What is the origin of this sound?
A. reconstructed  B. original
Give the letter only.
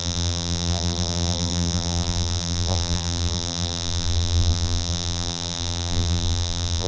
A